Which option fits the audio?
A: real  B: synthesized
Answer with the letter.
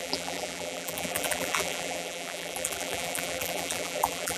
B